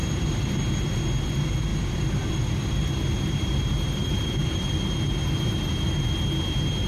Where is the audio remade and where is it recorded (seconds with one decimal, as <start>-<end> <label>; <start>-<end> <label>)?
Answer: 0.0-0.7 remade; 0.7-1.7 recorded; 1.7-2.3 remade; 2.3-4.0 recorded; 4.0-4.7 remade; 4.7-6.9 recorded